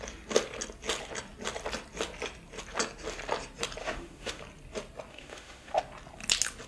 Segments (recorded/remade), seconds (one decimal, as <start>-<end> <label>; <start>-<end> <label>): 0.0-3.8 recorded; 3.8-4.4 remade; 4.4-5.1 recorded; 5.1-5.8 remade; 5.8-6.7 recorded